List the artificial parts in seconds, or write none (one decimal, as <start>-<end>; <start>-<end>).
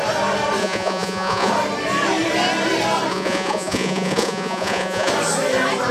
0.6-1.5; 3.1-5.1